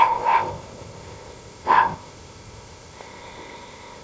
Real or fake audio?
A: fake